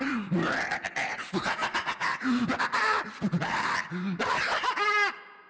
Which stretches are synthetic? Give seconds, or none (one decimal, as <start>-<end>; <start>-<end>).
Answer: 1.1-2.4